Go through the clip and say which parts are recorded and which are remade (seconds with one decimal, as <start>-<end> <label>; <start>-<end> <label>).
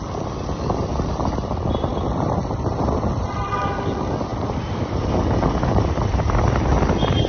0.0-1.9 recorded; 1.9-3.5 remade; 3.5-4.3 recorded; 4.3-5.2 remade; 5.2-7.3 recorded